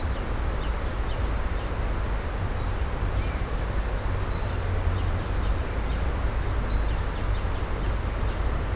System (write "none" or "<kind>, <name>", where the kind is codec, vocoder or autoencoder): none